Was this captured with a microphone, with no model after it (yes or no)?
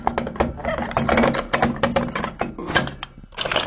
yes